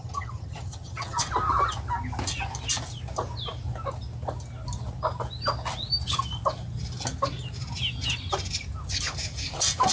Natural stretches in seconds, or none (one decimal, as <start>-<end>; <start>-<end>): 1.3-9.9